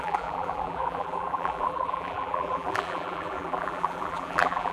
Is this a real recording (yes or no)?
no